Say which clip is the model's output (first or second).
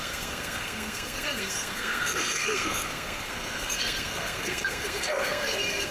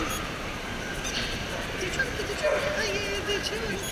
first